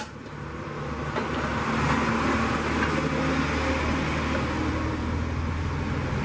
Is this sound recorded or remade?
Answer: recorded